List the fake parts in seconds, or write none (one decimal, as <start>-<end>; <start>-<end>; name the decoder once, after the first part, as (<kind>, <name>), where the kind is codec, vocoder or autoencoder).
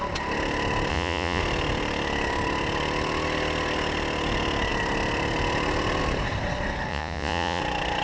0.9-1.4 (vocoder, Vocos); 6.9-7.6